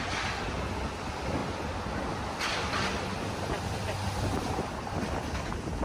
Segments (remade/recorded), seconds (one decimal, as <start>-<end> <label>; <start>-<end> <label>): 0.0-5.8 recorded